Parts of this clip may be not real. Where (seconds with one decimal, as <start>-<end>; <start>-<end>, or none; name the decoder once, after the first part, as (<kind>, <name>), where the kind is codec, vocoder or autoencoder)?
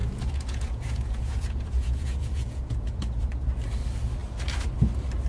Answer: 0.0-3.2 (vocoder, Vocos)